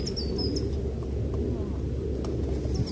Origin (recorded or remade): recorded